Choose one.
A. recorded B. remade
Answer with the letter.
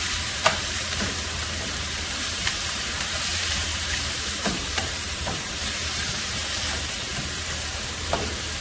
B